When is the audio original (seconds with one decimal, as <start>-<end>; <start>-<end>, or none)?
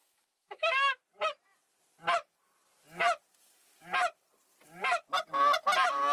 1.0-6.1